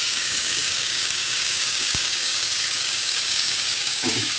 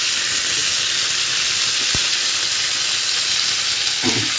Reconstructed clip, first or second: first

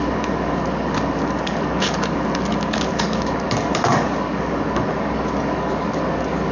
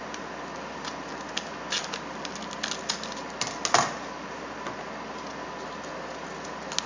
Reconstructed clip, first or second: first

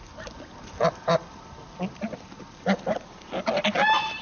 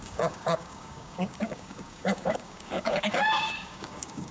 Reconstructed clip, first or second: second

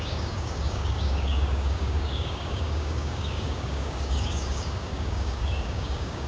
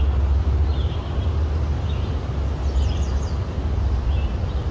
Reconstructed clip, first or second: first